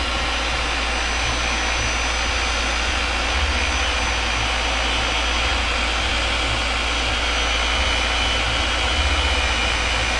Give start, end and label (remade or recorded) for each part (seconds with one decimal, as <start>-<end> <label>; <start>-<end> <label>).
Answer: 0.0-10.2 recorded